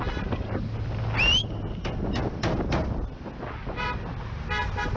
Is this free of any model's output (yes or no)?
yes